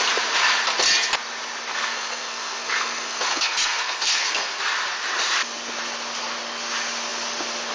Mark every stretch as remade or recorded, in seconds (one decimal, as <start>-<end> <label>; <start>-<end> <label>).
0.0-1.7 recorded; 1.7-4.6 remade; 4.6-7.7 recorded